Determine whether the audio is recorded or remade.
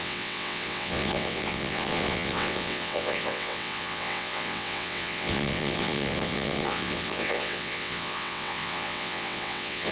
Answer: remade